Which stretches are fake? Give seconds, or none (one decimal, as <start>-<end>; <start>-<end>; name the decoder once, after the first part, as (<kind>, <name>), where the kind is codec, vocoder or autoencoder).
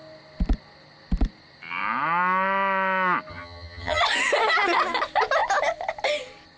3.3-4.0 (vocoder, HiFi-GAN)